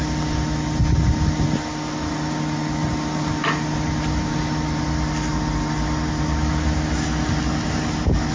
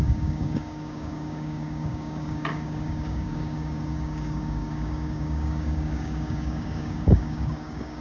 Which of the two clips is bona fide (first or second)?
first